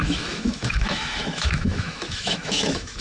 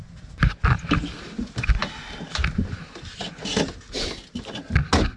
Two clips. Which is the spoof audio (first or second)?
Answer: first